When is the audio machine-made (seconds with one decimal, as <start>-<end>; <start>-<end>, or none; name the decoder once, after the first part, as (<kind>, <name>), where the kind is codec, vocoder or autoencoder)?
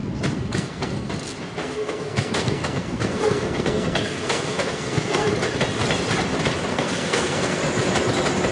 0.0-1.1 (codec, SNAC); 1.6-5.3; 6.7-7.6